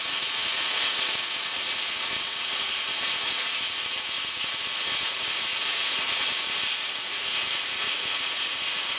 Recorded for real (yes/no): no